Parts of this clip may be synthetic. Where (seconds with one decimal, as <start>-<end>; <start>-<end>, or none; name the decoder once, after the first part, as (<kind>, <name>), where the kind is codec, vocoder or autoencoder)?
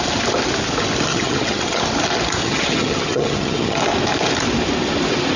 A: 1.1-1.8 (vocoder, HiFi-GAN); 2.4-3.8